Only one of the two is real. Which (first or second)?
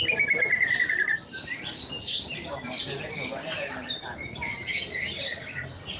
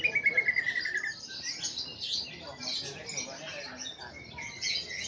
second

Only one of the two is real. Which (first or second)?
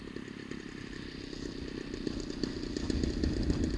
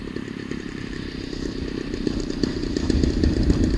first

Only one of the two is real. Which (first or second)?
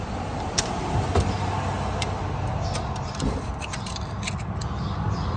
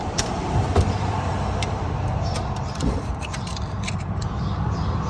first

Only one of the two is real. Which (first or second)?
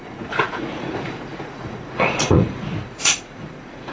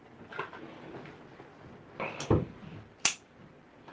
second